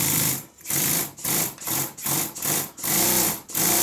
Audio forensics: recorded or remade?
remade